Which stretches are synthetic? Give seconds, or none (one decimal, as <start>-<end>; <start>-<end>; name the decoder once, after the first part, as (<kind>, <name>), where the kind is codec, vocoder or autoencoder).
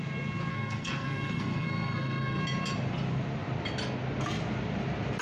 0.5-2.4 (codec, SNAC)